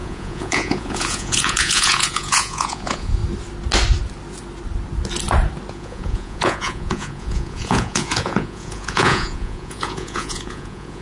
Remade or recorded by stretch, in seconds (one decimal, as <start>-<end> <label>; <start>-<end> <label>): 0.0-3.2 remade; 3.2-5.7 recorded; 5.7-11.0 remade